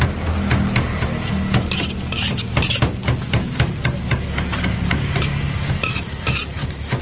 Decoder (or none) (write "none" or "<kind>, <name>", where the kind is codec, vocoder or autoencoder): none